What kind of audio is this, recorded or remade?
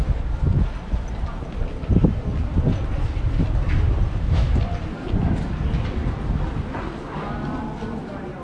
recorded